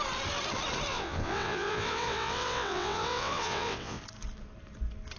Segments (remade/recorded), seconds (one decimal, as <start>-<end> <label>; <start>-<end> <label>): 0.0-0.9 recorded; 0.9-4.0 remade; 4.0-5.2 recorded